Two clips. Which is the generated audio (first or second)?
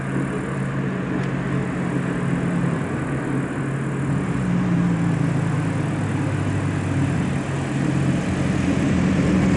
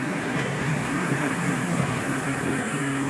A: second